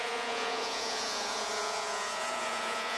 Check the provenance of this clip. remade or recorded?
remade